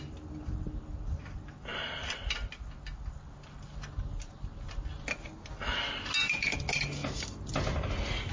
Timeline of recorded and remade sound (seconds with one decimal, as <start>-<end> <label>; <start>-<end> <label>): 0.0-8.3 recorded